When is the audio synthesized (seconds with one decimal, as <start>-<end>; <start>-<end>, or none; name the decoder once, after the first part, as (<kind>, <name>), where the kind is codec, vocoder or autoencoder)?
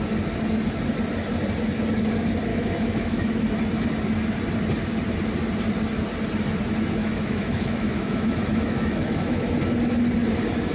2.5-3.4 (autoencoder, DAC-VAE); 7.0-9.5